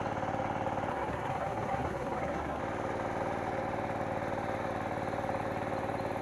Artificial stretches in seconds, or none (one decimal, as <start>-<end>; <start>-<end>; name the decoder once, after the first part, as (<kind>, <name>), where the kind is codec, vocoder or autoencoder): 0.9-2.6 (codec, SNAC)